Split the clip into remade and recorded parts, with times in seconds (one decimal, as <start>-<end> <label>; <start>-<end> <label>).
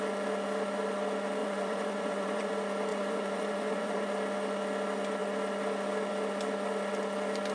0.0-1.4 recorded; 1.4-2.5 remade; 2.5-2.9 recorded; 2.9-4.1 remade; 4.1-7.5 recorded